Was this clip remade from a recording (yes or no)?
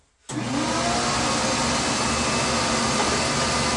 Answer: no